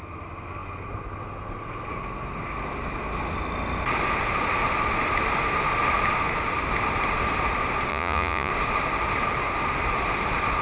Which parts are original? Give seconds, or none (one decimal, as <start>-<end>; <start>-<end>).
0.0-7.9; 8.5-10.6